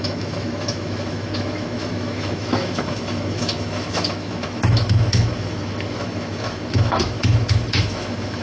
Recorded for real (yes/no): no